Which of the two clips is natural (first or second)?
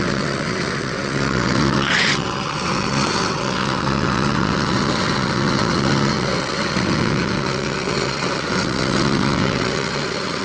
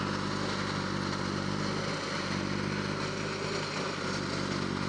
second